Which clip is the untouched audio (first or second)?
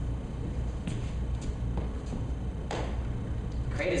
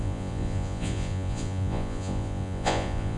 first